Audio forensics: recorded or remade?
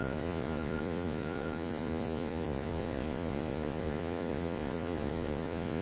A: remade